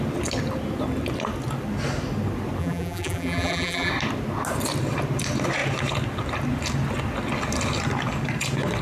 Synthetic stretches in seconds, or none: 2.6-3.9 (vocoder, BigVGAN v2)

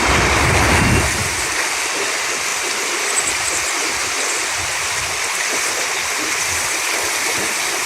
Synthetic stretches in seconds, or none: none

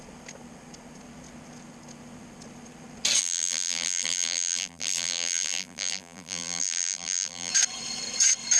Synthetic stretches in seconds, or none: 3.2-7.5 (vocoder, BigVGAN v2)

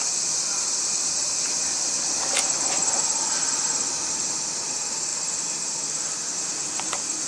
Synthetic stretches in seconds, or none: 0.0-7.3 (vocoder, BigVGAN v2)

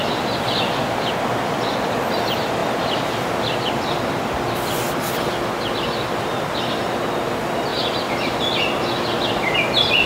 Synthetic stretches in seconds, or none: 7.7-8.4 (vocoder, BigVGAN v2)